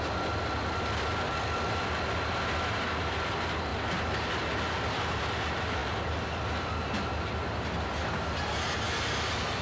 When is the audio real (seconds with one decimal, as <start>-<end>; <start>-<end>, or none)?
0.0-9.6